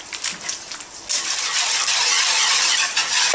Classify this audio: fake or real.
real